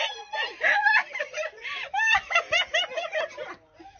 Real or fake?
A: fake